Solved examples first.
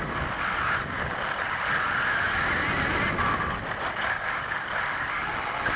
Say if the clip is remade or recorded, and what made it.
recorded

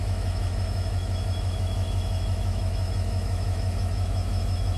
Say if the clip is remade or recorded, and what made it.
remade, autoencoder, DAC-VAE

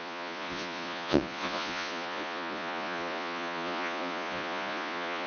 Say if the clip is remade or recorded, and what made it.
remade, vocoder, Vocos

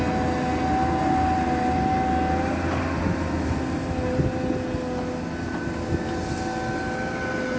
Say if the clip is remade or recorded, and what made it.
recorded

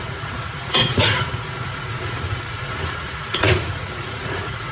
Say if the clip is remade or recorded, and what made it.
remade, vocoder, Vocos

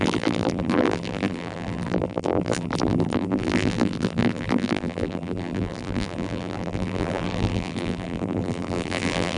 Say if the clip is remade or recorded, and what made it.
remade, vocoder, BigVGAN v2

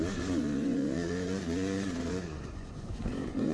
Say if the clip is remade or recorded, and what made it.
remade, vocoder, Vocos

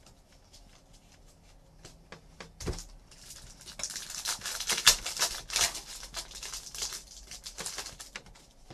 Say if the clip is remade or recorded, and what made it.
recorded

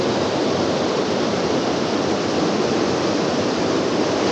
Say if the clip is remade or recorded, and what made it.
recorded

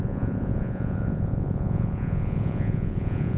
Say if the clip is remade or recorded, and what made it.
remade, vocoder, Vocos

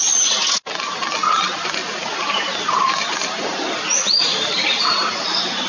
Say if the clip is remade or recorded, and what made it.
recorded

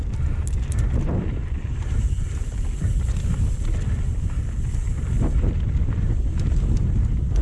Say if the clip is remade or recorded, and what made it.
recorded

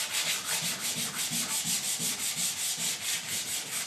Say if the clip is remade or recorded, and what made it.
recorded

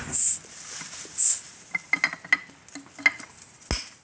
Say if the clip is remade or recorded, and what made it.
recorded